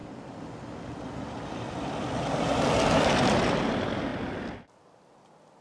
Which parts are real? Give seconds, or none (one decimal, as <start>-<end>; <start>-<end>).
0.0-5.6